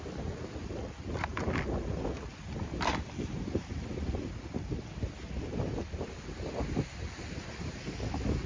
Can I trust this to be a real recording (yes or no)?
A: yes